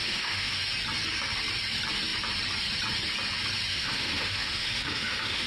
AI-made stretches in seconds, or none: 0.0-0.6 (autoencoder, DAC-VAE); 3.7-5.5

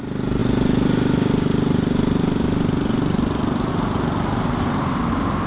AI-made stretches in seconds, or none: none

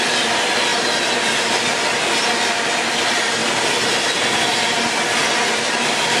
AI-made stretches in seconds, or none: 0.0-0.7 (vocoder, BigVGAN v2); 2.8-3.4; 3.9-6.2

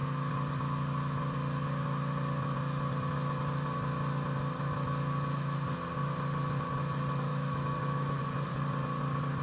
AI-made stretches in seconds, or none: 7.3-8.2 (autoencoder, DAC-VAE)

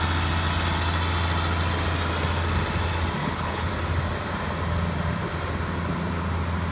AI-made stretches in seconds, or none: 3.2-3.7 (codec, HILCodec)

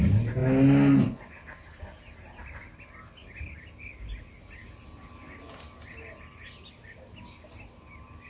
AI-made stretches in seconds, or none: none

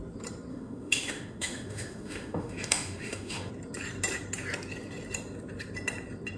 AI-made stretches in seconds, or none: 0.5-3.5 (autoencoder, DAC-VAE)

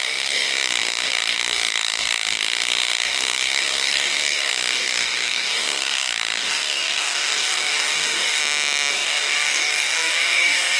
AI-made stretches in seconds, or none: 0.0-8.4 (codec, DAC); 8.9-10.8